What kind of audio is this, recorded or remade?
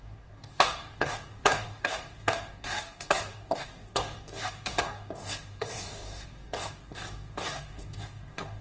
remade